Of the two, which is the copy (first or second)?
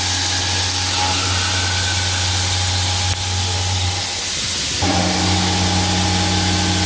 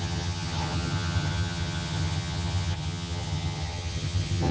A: second